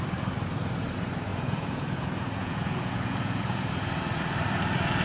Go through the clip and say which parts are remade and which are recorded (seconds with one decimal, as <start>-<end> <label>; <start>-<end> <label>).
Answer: 0.0-1.3 recorded; 1.3-3.7 remade; 3.7-5.0 recorded